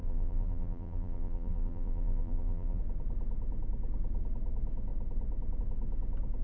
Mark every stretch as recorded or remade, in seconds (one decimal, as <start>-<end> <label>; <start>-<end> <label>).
0.0-2.8 remade; 2.8-6.4 recorded